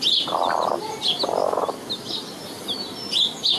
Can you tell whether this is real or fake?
real